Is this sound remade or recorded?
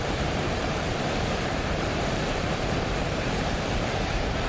remade